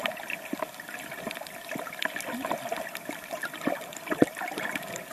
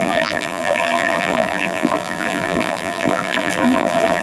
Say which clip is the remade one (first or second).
second